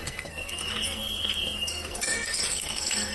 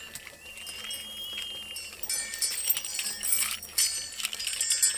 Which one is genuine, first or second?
second